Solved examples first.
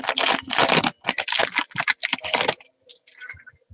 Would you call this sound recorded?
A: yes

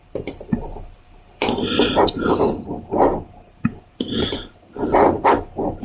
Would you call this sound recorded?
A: no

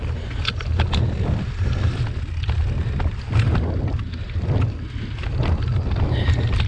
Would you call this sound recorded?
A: yes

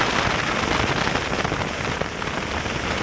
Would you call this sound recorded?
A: yes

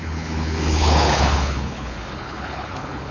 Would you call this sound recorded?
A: no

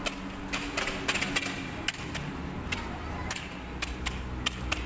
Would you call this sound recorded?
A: yes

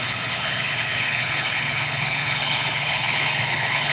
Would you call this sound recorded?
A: no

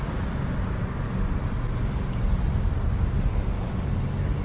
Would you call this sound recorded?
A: yes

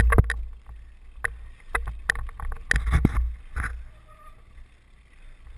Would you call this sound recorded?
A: yes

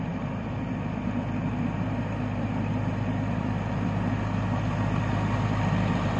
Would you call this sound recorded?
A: yes